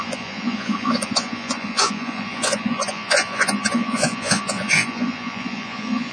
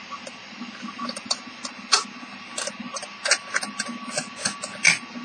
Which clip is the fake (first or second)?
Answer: first